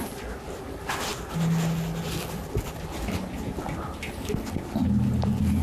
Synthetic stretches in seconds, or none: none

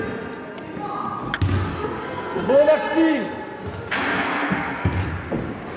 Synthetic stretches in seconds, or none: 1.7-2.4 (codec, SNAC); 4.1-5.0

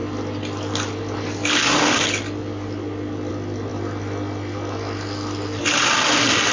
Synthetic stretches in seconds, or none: none

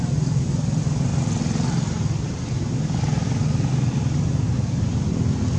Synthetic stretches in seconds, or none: none